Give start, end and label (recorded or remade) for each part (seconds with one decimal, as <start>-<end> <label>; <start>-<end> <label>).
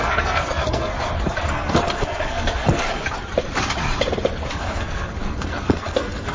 0.0-0.9 remade; 0.9-1.5 recorded; 1.5-3.0 remade; 3.0-4.5 recorded; 4.5-6.3 remade